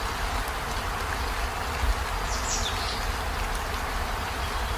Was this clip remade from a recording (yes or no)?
no